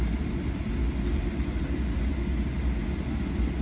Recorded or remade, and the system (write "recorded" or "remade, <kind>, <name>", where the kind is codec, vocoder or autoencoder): recorded